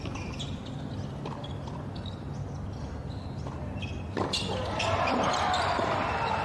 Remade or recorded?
recorded